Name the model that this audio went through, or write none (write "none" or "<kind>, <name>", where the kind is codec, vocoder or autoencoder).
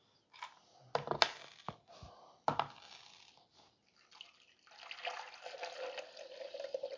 none